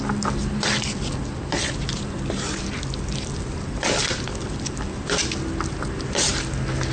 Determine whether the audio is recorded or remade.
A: recorded